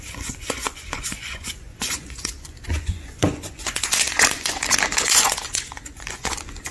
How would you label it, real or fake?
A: fake